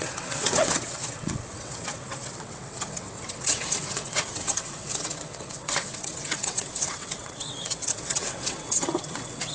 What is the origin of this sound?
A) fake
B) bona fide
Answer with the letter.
A